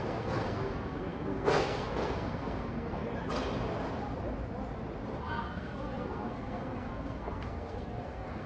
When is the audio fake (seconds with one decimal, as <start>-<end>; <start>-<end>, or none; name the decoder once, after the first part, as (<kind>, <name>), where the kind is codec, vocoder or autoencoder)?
0.0-3.0 (codec, SNAC); 5.2-8.5